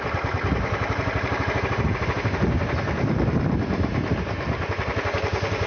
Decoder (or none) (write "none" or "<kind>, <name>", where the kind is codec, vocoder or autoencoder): vocoder, BigVGAN v2